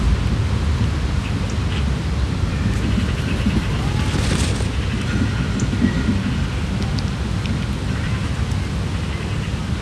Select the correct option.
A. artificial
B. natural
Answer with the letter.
B